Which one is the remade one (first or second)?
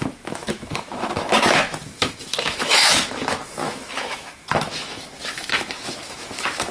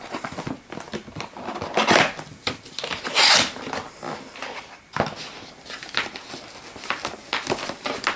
first